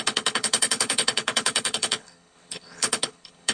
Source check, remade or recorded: remade